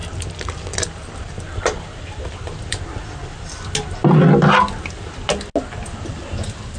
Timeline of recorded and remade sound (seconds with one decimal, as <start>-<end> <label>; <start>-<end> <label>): 0.0-1.4 remade; 1.4-6.8 recorded